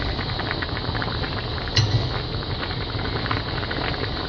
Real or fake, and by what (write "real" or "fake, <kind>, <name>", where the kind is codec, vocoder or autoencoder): real